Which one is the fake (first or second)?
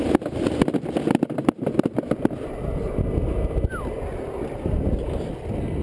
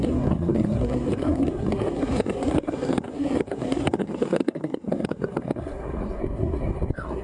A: second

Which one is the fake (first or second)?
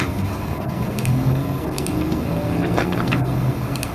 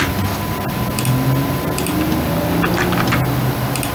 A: first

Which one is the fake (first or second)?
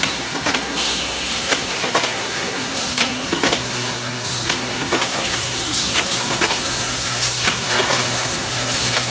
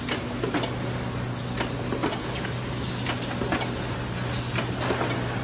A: first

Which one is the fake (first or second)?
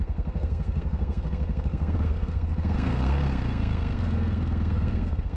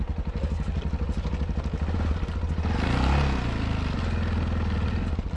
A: first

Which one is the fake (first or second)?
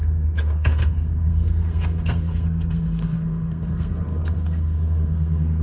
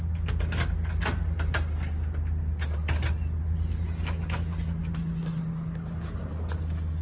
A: first